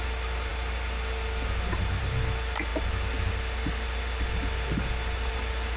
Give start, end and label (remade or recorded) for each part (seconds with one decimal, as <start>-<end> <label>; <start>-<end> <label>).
0.0-5.8 recorded